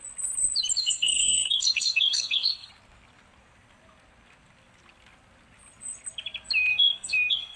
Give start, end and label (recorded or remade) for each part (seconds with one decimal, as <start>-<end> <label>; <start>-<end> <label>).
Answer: 0.0-0.8 recorded; 0.8-2.7 remade; 2.7-6.7 recorded; 6.7-7.6 remade